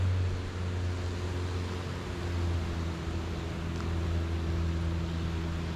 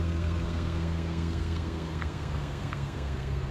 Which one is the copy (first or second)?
second